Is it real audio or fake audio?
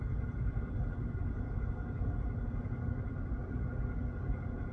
real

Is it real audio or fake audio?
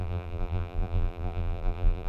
fake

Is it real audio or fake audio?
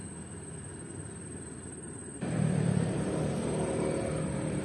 fake